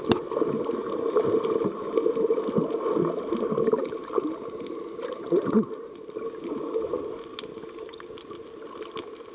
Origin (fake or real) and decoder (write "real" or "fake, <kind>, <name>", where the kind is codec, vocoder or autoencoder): real